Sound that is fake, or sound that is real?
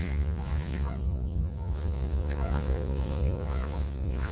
fake